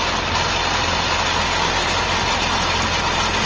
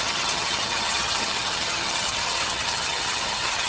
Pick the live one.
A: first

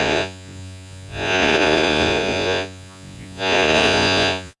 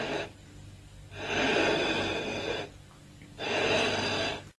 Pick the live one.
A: second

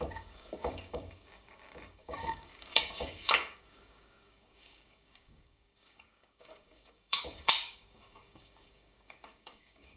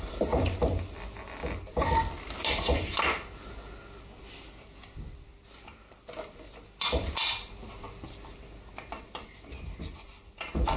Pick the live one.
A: second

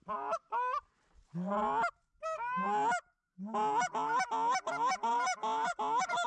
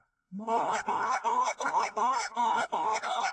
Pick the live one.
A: first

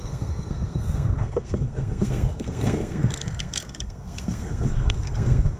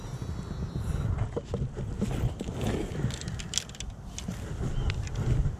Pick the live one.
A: second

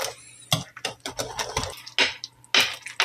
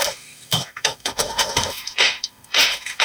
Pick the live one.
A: first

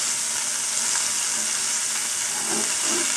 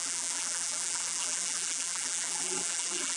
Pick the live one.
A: first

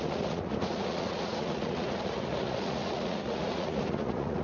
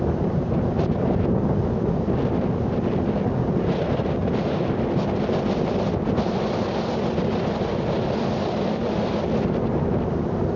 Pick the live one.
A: second